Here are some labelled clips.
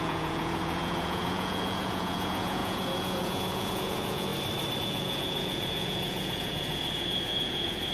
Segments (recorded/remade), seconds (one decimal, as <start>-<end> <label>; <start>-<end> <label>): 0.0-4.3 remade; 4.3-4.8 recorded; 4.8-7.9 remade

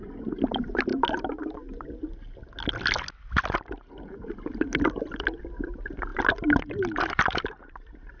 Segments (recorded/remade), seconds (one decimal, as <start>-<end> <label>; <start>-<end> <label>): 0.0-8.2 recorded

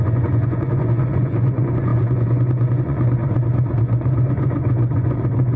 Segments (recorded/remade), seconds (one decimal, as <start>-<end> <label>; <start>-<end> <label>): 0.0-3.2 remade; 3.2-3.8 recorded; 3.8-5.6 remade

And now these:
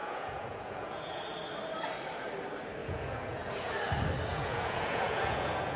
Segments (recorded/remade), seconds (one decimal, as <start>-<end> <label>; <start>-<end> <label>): 0.0-1.2 remade; 1.2-2.8 recorded; 2.8-3.7 remade; 3.7-4.3 recorded; 4.3-5.8 remade